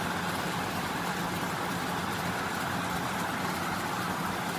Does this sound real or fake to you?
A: real